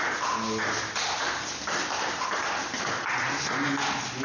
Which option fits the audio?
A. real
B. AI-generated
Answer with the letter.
A